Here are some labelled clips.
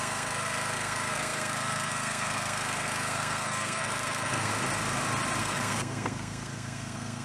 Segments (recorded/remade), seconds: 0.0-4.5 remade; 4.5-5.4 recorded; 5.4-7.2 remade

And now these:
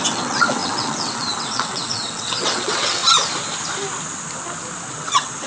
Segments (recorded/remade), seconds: 0.0-3.0 remade; 3.0-4.9 recorded; 4.9-5.5 remade

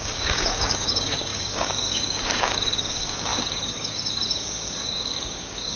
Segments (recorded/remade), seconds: 0.0-5.8 remade

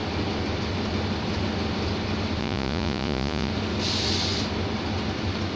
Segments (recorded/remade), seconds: 0.0-2.4 recorded; 2.4-3.5 remade; 3.5-5.6 recorded

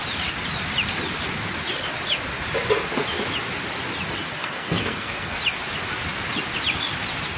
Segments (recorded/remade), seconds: 0.0-4.4 recorded; 4.4-5.4 remade; 5.4-7.4 recorded

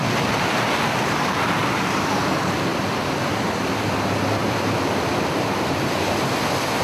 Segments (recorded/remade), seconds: 0.0-1.6 recorded; 1.6-2.1 remade; 2.1-2.7 recorded; 2.7-3.3 remade; 3.3-4.4 recorded; 4.4-5.3 remade; 5.3-6.8 recorded

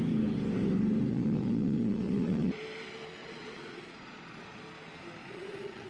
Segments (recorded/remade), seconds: 0.0-1.1 recorded; 1.1-2.6 remade; 2.6-3.2 recorded; 3.2-4.6 remade; 4.6-5.2 recorded; 5.2-5.9 remade